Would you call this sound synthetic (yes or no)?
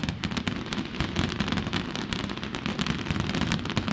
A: no